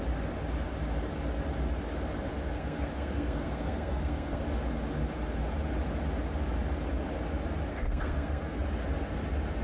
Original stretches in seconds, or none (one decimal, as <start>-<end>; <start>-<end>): 0.0-2.5; 4.4-7.7; 8.6-9.6